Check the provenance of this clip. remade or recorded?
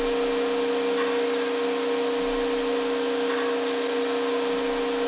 recorded